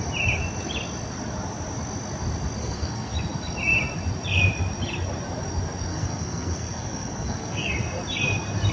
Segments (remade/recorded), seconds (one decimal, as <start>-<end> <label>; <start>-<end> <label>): 0.0-2.6 recorded; 2.6-3.1 remade; 3.1-5.9 recorded; 5.9-7.7 remade; 7.7-8.7 recorded